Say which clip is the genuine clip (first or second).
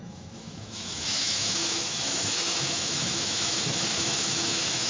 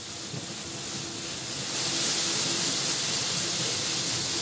second